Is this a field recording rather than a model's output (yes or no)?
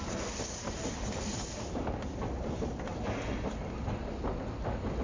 yes